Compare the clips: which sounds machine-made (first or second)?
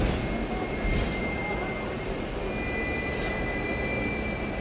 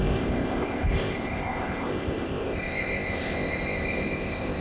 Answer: second